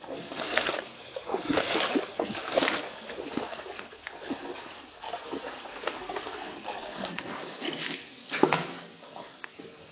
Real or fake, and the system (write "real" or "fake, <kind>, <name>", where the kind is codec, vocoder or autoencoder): fake, codec, SNAC